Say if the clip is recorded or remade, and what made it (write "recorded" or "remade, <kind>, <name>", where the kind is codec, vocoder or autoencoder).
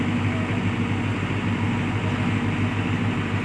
recorded